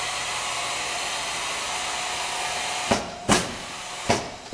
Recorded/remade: recorded